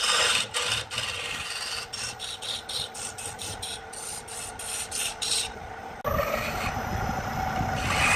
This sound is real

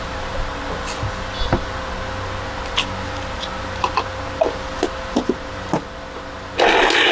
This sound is real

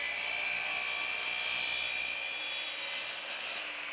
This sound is real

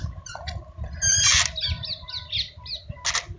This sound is real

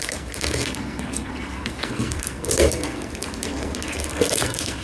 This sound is fake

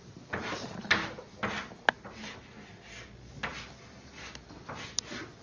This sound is real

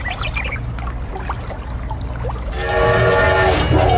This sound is real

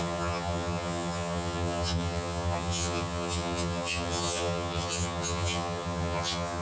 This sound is fake